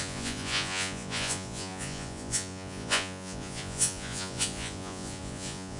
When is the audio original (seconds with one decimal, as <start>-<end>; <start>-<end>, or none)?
none